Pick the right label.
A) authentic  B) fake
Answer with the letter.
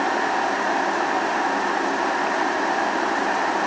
A